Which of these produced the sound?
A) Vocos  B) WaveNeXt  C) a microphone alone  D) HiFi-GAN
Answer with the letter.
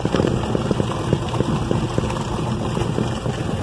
C